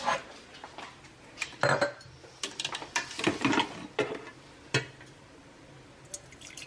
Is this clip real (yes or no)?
yes